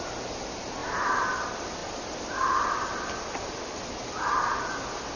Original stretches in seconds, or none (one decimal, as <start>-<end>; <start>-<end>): 0.0-5.2